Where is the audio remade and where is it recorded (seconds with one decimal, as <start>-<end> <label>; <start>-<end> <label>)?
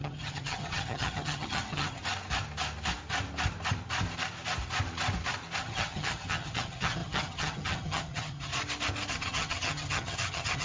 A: 0.0-2.0 remade; 2.0-5.6 recorded; 5.6-8.5 remade; 8.5-9.1 recorded; 9.1-10.6 remade